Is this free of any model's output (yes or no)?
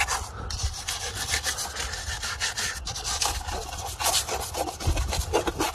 yes